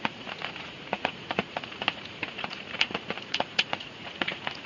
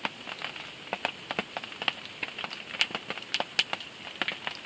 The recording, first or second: second